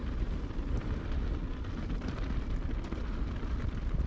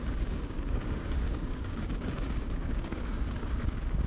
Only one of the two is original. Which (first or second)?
first